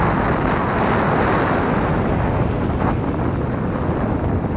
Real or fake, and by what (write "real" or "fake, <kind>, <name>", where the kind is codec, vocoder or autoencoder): real